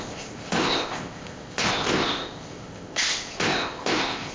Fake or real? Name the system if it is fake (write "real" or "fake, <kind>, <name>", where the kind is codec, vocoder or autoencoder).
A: fake, codec, ZipCodec